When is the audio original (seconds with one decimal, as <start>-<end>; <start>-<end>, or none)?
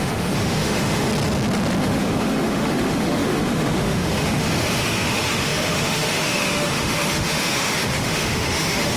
1.1-1.8